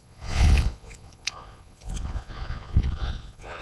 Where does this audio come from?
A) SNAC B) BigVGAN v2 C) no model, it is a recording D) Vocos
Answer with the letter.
D